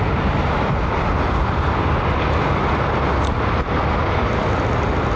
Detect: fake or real real